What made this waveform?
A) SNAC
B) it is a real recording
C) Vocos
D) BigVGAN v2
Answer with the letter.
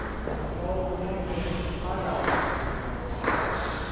B